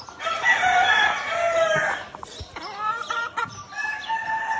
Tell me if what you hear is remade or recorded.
recorded